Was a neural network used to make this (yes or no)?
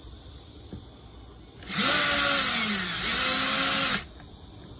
no